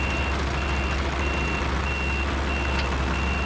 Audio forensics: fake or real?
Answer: real